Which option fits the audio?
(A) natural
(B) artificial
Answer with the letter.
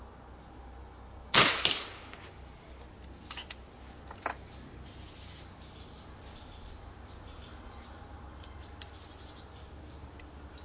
A